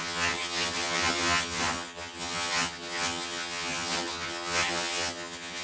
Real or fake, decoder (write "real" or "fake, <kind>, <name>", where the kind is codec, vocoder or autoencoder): fake, vocoder, HiFi-GAN